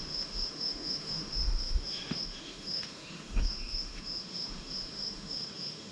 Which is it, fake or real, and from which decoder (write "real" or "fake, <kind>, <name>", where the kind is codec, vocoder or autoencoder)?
fake, autoencoder, DAC-VAE